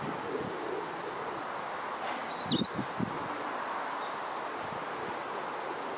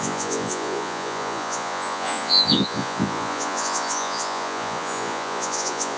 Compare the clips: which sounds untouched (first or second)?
first